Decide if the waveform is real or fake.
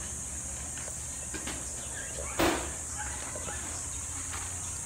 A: real